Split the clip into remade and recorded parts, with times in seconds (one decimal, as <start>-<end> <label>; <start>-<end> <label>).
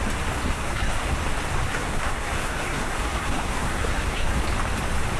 0.0-0.5 recorded; 0.5-1.2 remade; 1.2-1.7 recorded; 1.7-4.4 remade; 4.4-5.2 recorded